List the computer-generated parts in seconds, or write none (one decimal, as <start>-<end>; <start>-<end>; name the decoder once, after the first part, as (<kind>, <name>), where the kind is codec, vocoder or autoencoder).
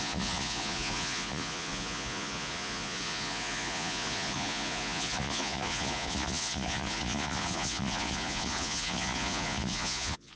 0.0-10.4 (vocoder, Vocos)